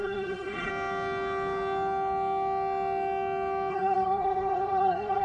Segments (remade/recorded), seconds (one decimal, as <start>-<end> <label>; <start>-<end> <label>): 0.0-0.7 remade; 0.7-3.7 recorded; 3.7-5.2 remade